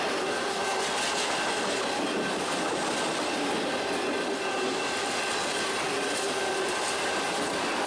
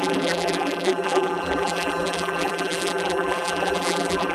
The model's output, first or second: second